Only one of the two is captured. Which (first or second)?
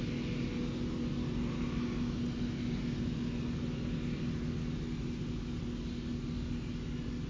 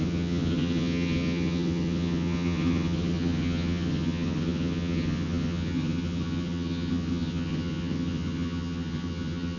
first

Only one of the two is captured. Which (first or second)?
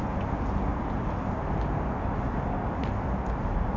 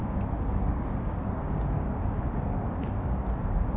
first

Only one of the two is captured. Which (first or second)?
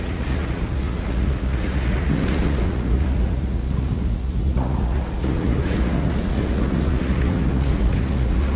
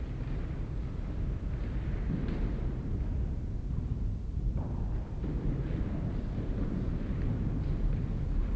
second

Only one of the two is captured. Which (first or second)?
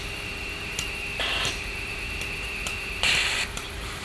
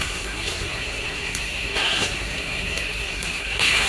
first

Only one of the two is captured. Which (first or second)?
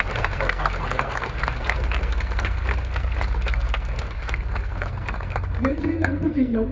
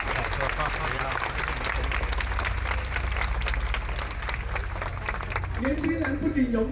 second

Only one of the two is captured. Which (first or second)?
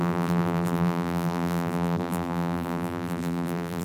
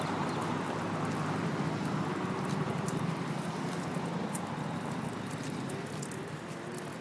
second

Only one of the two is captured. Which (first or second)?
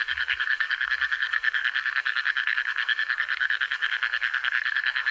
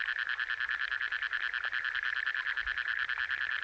second